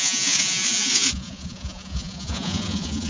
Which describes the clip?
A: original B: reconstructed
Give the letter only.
B